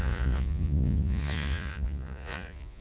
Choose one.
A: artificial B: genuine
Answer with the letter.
A